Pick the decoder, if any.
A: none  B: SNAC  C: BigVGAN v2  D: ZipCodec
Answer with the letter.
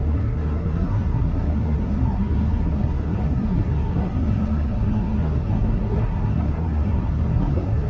B